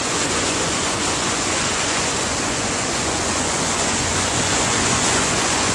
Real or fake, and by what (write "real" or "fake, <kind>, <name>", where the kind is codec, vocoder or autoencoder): fake, vocoder, Vocos